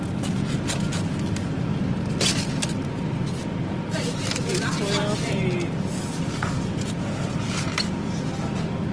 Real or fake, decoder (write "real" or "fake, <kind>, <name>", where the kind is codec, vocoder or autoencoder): real